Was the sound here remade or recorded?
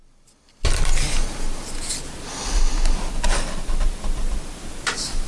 recorded